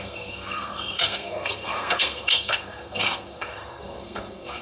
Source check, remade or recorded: remade